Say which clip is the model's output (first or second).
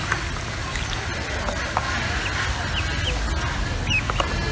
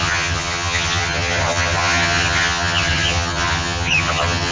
second